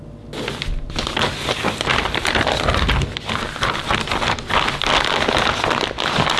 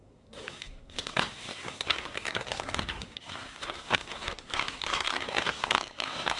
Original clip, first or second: first